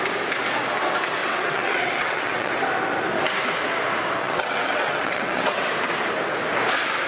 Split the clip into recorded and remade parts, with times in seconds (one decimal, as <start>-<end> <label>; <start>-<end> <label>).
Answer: 0.0-1.2 recorded; 1.2-2.5 remade; 2.5-4.2 recorded; 4.2-5.7 remade; 5.7-7.1 recorded